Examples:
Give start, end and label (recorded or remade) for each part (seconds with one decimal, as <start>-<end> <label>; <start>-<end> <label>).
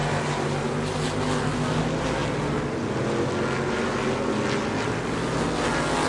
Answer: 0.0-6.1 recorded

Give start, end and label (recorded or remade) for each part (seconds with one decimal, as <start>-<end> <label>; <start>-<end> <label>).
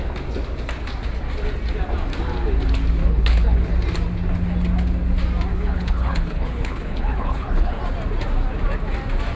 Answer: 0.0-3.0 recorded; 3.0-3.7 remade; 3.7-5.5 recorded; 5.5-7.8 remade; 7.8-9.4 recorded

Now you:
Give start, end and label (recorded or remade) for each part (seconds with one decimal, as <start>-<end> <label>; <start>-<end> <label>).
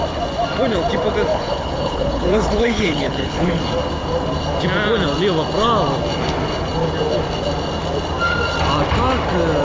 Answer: 0.0-1.3 recorded; 1.3-3.6 remade; 3.6-9.6 recorded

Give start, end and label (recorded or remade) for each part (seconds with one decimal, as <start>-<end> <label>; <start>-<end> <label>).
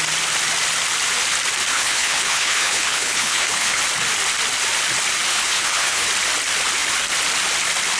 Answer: 0.0-1.7 recorded; 1.7-3.8 remade; 3.8-5.3 recorded; 5.3-6.1 remade; 6.1-8.0 recorded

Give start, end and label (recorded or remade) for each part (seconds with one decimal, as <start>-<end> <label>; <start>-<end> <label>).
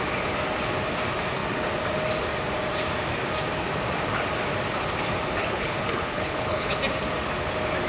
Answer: 0.0-5.4 recorded; 5.4-6.8 remade; 6.8-7.9 recorded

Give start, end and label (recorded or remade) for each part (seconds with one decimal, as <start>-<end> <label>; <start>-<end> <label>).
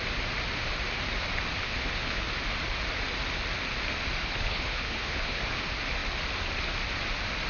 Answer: 0.0-1.6 recorded; 1.6-2.2 remade; 2.2-4.2 recorded; 4.2-5.4 remade; 5.4-7.5 recorded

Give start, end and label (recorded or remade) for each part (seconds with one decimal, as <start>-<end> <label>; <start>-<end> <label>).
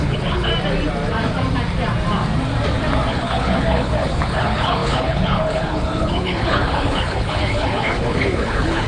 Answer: 0.0-0.5 remade; 0.5-3.1 recorded; 3.1-8.9 remade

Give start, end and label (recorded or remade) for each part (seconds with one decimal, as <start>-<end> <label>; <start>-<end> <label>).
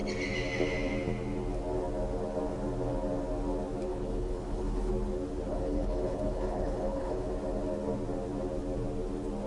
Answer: 0.0-3.9 recorded; 3.9-4.9 remade; 4.9-5.5 recorded; 5.5-7.3 remade; 7.3-9.5 recorded